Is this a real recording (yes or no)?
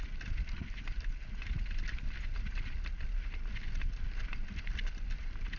yes